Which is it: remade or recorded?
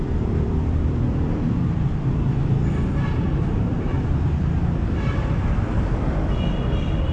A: remade